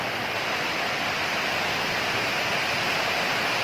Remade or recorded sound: recorded